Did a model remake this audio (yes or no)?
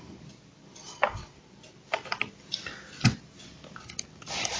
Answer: no